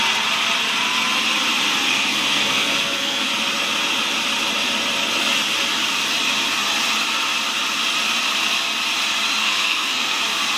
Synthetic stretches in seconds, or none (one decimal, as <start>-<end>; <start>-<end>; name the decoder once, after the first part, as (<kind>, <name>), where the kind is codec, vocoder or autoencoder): 1.9-3.3 (codec, SNAC); 9.4-10.2